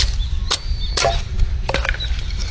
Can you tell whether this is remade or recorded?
recorded